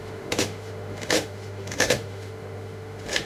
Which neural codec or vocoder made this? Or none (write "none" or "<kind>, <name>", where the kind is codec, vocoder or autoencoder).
autoencoder, DAC-VAE